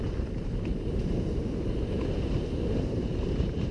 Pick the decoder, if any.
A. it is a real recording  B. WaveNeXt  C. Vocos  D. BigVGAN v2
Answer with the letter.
D